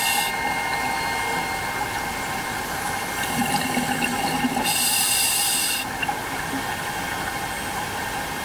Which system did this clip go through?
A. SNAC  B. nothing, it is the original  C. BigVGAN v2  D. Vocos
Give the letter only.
B